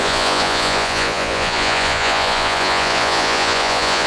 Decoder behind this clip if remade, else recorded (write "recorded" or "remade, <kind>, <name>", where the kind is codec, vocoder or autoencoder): remade, vocoder, Vocos